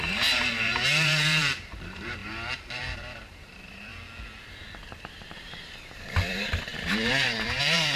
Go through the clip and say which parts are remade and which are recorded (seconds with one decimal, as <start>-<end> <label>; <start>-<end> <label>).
0.0-3.9 remade; 3.9-5.0 recorded; 5.0-8.0 remade